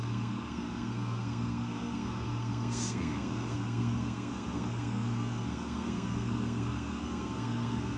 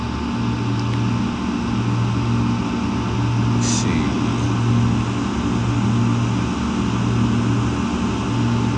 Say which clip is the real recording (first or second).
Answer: second